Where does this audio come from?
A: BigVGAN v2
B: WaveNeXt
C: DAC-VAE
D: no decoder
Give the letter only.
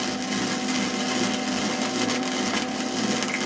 D